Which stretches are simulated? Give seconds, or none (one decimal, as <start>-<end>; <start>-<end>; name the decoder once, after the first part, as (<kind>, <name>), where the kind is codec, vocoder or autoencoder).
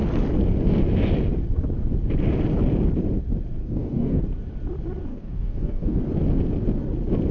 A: 3.6-4.2 (codec, DAC); 5.1-6.0